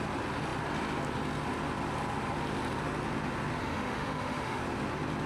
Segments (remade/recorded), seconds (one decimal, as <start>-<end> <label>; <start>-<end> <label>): 0.0-3.6 recorded; 3.6-4.6 remade; 4.6-5.3 recorded

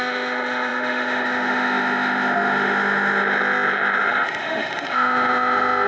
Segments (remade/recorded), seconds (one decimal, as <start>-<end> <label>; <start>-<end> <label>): 0.0-5.9 remade

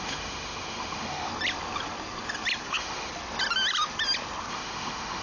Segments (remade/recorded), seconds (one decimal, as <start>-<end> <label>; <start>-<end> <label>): 0.0-1.3 remade; 1.3-2.7 recorded; 2.7-3.1 remade; 3.1-4.5 recorded; 4.5-5.2 remade

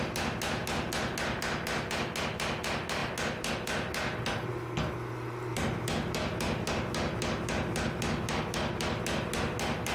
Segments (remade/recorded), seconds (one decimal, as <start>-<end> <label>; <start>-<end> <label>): 0.0-9.9 recorded

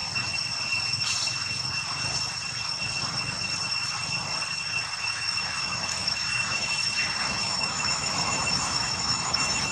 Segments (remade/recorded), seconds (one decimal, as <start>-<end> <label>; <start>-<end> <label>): 0.0-5.0 recorded; 5.0-6.8 remade; 6.8-7.3 recorded; 7.3-9.7 remade

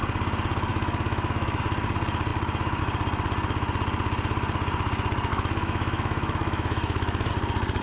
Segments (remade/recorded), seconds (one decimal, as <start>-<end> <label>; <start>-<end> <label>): 0.0-0.7 recorded; 0.7-1.6 remade; 1.6-5.3 recorded; 5.3-7.3 remade; 7.3-7.8 recorded